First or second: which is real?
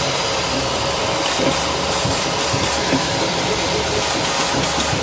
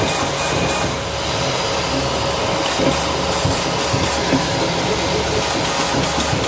second